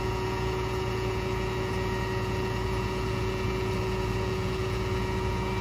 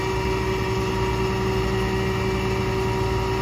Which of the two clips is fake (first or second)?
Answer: first